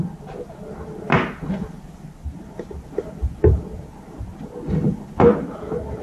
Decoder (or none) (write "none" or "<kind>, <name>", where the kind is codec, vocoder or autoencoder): none